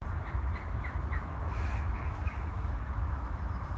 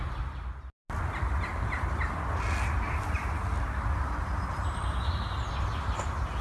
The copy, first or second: first